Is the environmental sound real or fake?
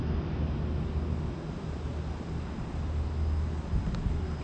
real